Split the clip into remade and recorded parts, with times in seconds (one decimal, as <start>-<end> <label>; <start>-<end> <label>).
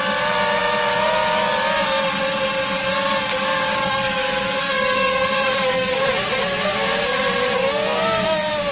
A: 0.0-3.3 recorded; 3.3-5.9 remade; 5.9-8.7 recorded